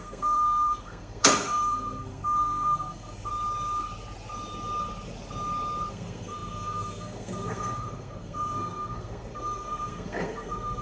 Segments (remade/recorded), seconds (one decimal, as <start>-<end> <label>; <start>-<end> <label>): 0.0-3.3 remade; 3.3-5.9 recorded; 5.9-10.8 remade